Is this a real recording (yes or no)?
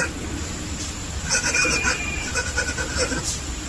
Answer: yes